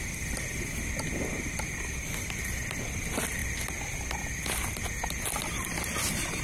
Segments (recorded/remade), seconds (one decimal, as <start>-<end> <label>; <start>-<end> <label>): 0.0-6.4 recorded